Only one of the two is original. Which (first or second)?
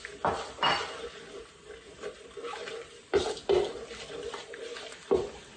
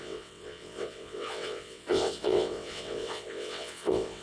first